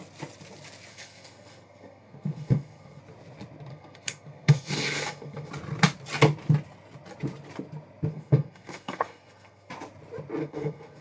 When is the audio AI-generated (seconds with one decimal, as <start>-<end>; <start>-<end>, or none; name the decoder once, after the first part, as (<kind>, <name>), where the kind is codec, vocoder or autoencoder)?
0.9-3.0 (codec, SNAC); 3.7-5.5; 8.1-9.7; 10.4-11.0